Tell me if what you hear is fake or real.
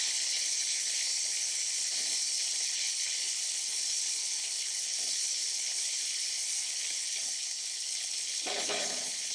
fake